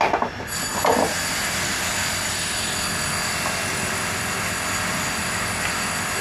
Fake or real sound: real